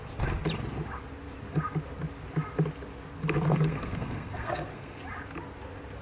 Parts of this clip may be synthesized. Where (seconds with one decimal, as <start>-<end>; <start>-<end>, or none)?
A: 3.5-5.0

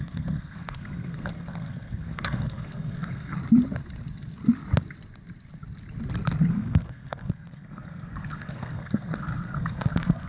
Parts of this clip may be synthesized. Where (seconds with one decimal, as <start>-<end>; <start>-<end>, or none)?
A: 0.0-3.4; 6.5-10.3

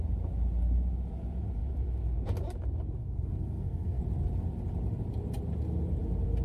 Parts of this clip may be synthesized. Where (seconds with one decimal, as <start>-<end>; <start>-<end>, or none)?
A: 3.0-4.0

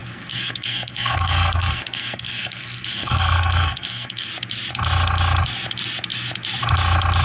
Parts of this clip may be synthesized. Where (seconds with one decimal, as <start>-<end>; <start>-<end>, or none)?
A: 0.0-4.3

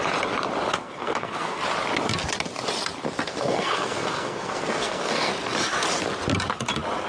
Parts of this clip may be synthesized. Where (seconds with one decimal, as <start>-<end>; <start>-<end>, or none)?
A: 0.8-1.6; 3.3-5.3

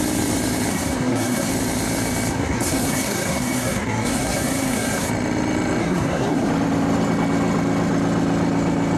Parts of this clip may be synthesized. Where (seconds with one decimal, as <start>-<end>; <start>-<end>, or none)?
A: 0.7-1.5; 2.3-5.1; 5.8-6.5

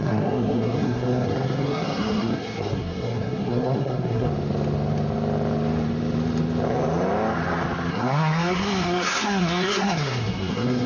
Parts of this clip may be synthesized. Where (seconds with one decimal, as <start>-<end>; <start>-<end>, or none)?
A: 0.0-4.3; 7.9-10.9